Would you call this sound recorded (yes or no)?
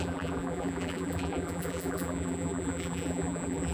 no